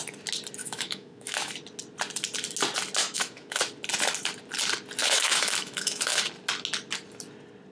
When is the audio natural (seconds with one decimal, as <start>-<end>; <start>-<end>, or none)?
0.0-0.6; 1.5-3.0; 3.6-5.0; 6.3-7.7